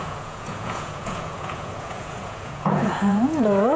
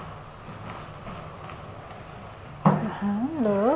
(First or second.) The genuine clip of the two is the second